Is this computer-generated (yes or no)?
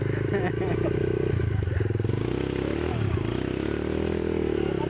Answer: yes